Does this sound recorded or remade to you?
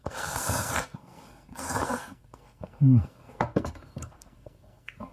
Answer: remade